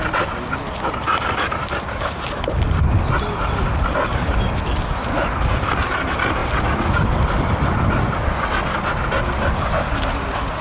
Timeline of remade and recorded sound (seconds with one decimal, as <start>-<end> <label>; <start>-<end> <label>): 0.0-6.4 recorded; 6.4-7.7 remade; 7.7-10.6 recorded